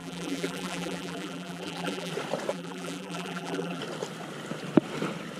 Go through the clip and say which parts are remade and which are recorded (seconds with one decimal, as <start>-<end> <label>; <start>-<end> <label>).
0.0-2.1 remade; 2.1-2.5 recorded; 2.5-3.8 remade; 3.8-5.4 recorded